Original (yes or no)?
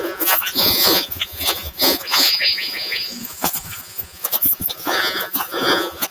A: no